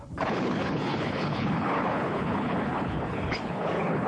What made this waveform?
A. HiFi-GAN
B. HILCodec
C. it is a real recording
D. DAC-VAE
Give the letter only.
B